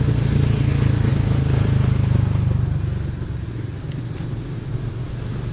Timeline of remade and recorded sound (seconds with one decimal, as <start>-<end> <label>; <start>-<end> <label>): 0.0-5.5 recorded